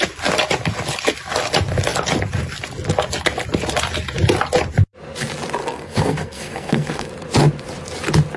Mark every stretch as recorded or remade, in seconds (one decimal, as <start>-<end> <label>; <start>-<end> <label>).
0.0-5.6 recorded; 5.6-7.1 remade; 7.1-8.4 recorded